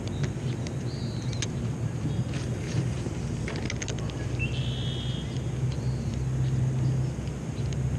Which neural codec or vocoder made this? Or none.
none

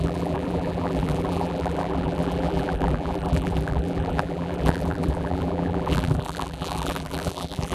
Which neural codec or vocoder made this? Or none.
vocoder, BigVGAN v2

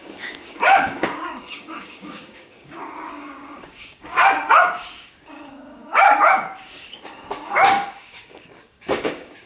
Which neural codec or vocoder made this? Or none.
codec, DAC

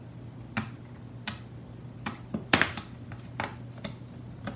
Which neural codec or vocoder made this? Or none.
none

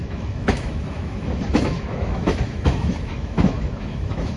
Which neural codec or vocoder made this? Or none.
autoencoder, DAC-VAE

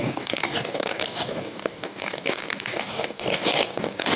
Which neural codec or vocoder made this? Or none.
codec, DAC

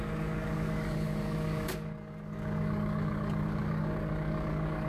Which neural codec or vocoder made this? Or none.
codec, DAC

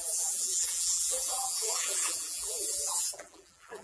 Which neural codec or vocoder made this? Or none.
vocoder, BigVGAN v2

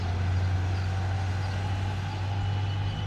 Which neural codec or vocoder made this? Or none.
none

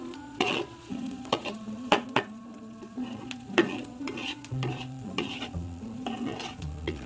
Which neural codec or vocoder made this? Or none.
vocoder, Vocos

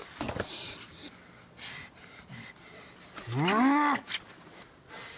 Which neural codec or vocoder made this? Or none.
none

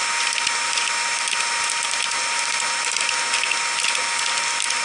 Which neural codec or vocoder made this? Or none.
none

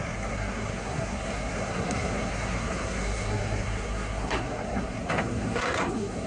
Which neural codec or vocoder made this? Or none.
codec, SNAC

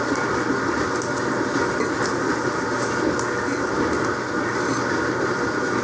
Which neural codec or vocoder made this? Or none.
none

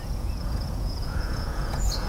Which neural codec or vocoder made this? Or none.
vocoder, Vocos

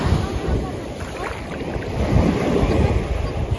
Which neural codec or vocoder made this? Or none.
vocoder, BigVGAN v2